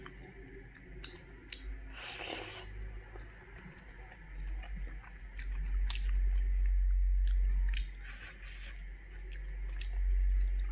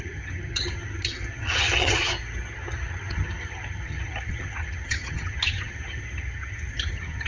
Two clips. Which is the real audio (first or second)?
first